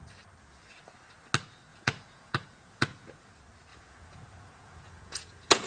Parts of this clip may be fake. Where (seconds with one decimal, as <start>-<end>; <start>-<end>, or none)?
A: 1.7-3.3; 3.7-5.7